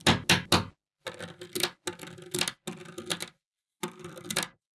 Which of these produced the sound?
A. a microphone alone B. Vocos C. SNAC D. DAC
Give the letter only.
A